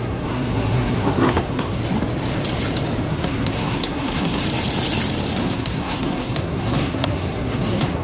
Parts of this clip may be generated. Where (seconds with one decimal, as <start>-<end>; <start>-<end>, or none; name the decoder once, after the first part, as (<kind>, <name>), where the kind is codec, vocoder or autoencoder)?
0.0-1.8 (codec, SNAC); 3.1-4.4; 5.4-8.0